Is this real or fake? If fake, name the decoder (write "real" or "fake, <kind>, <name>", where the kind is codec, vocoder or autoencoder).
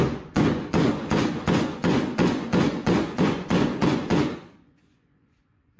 fake, vocoder, Vocos